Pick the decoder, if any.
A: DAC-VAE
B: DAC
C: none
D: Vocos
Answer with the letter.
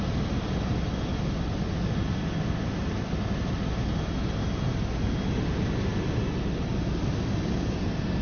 C